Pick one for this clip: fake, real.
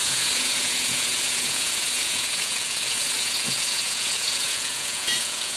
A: fake